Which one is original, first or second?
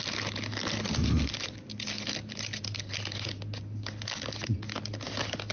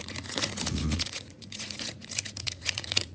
first